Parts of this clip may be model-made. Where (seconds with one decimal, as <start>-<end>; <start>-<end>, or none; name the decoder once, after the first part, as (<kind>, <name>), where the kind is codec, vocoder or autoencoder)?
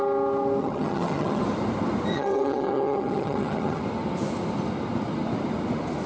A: 0.6-1.4 (vocoder, HiFi-GAN); 2.1-3.8